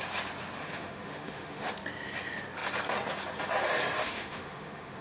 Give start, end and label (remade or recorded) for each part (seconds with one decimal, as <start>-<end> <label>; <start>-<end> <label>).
0.0-0.6 recorded; 0.6-1.7 remade; 1.7-4.0 recorded; 4.0-5.0 remade